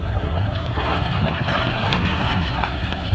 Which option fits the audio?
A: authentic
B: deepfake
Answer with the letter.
B